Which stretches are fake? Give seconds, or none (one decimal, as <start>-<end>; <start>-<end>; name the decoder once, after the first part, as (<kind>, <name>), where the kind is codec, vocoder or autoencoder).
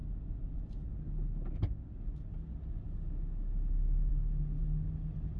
none